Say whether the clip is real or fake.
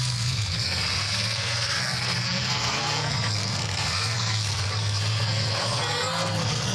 fake